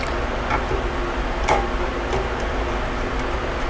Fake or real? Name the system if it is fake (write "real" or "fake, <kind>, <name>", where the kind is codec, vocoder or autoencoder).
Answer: real